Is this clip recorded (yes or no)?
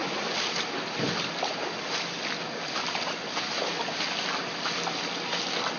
yes